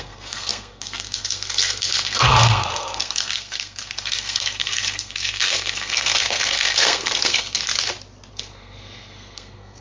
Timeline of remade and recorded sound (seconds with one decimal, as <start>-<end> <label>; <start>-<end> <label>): 0.0-7.7 remade; 7.7-8.3 recorded; 8.3-9.8 remade